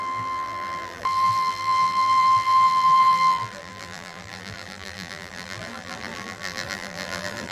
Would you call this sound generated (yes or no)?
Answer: yes